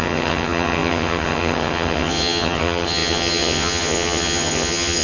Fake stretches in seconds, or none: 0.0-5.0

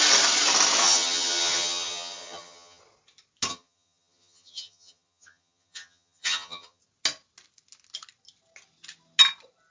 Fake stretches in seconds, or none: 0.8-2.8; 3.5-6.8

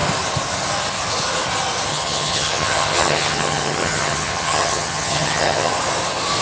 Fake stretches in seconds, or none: 1.9-5.7

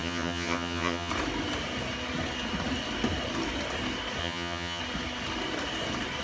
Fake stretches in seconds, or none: 0.0-1.1; 4.2-4.8